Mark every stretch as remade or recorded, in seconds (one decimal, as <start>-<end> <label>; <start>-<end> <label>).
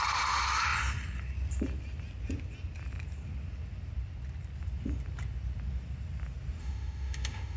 0.0-6.6 recorded; 6.6-7.6 remade